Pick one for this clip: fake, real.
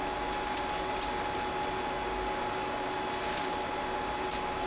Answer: real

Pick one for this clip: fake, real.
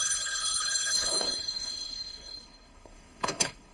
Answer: fake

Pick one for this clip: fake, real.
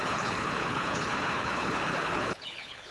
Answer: fake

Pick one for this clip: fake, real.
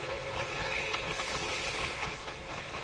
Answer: fake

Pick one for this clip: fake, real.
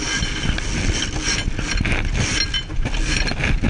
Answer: real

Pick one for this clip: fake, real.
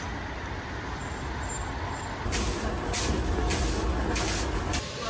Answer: real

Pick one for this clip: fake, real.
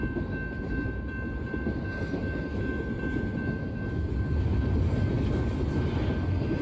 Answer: real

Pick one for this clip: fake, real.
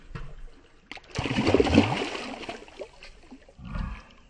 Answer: real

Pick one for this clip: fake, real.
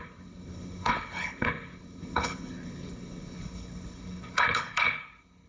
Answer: fake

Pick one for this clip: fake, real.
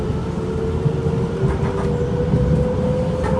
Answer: real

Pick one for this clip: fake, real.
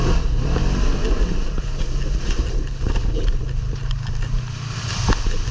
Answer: real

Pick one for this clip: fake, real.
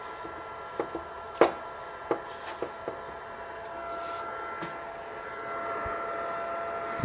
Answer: real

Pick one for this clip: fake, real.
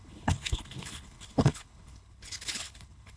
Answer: fake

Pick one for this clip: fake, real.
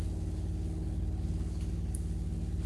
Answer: fake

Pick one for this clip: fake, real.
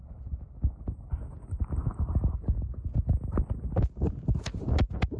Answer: real